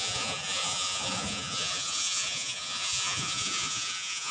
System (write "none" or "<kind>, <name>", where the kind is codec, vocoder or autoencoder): vocoder, Vocos